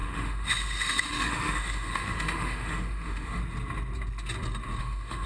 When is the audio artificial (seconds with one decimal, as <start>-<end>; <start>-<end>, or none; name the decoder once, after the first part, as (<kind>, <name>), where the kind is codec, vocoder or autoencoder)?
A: 0.0-3.4 (autoencoder, DAC-VAE); 4.8-5.3